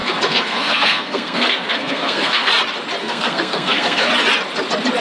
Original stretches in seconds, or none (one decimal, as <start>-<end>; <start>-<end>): 2.5-3.0; 4.1-5.0